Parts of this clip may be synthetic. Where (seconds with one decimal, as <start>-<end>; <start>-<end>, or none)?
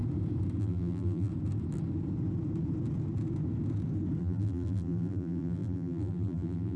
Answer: 0.6-1.3; 4.2-6.8